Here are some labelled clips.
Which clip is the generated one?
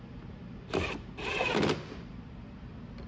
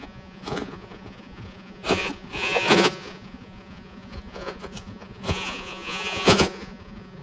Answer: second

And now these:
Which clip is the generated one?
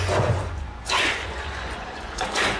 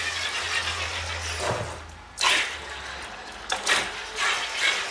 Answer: first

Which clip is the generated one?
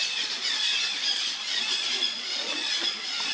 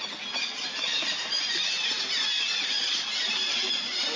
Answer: first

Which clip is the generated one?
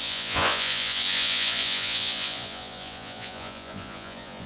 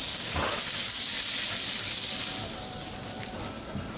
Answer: first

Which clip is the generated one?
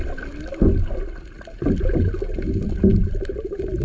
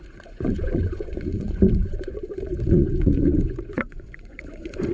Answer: second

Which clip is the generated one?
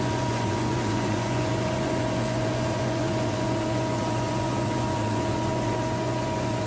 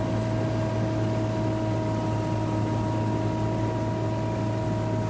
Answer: first